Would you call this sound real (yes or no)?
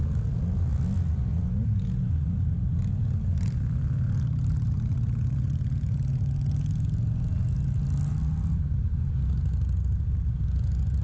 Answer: yes